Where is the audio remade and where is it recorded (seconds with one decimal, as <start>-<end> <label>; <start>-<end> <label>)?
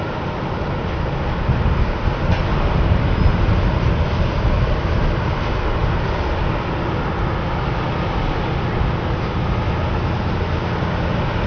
0.0-11.5 recorded